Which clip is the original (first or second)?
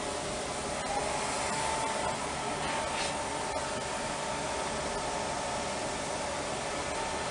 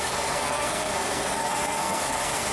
first